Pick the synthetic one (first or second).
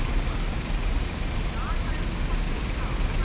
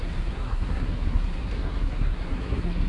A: second